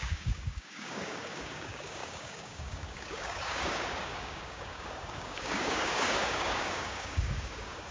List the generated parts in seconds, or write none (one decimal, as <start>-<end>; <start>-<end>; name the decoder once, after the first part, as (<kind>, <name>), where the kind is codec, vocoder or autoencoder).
0.0-7.9 (codec, DAC)